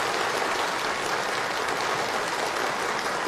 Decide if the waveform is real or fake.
real